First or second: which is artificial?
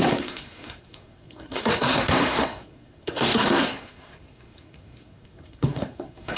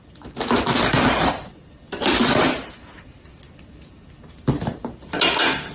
first